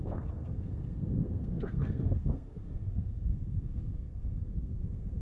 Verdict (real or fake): fake